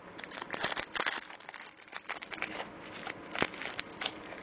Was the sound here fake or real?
real